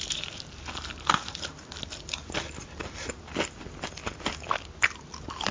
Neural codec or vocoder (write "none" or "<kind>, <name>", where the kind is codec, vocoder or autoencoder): none